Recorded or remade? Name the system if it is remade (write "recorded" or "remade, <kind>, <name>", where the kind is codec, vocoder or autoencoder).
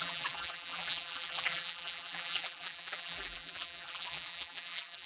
remade, vocoder, BigVGAN v2